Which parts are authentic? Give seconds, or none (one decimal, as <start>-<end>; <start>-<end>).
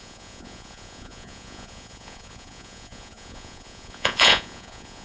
none